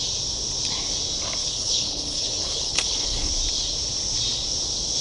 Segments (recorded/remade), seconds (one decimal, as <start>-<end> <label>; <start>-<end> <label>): 0.0-1.4 recorded; 1.4-3.3 remade; 3.3-5.0 recorded